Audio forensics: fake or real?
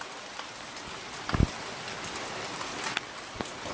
real